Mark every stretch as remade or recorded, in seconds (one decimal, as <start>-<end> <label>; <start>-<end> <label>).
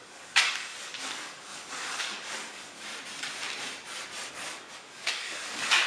0.0-2.9 remade; 2.9-4.3 recorded; 4.3-5.9 remade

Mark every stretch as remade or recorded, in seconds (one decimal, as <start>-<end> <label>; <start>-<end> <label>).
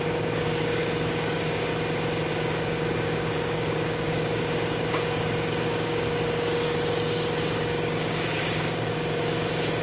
0.0-1.7 remade; 1.7-2.3 recorded; 2.3-9.8 remade